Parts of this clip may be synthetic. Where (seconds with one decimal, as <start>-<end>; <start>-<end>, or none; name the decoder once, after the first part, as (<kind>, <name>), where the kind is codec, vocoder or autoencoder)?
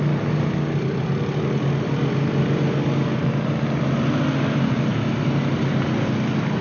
none